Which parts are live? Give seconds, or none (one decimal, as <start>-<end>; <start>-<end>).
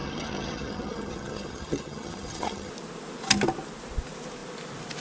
2.7-5.0